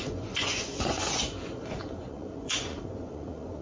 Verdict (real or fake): fake